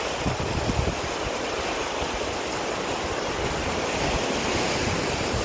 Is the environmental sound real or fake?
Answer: real